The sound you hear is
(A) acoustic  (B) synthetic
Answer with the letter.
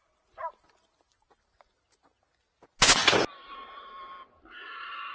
A